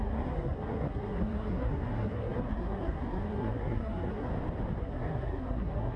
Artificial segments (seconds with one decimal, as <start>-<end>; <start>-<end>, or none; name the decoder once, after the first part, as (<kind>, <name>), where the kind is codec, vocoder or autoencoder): 0.0-4.3 (codec, SNAC); 4.8-6.0